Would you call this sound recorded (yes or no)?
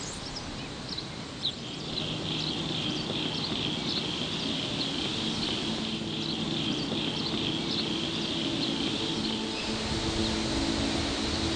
yes